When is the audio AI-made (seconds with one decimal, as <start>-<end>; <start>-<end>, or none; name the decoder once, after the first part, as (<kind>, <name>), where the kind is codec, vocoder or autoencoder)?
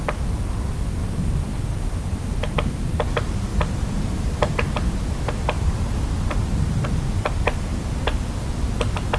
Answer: 1.0-3.0 (vocoder, BigVGAN v2); 3.5-6.0; 7.7-8.2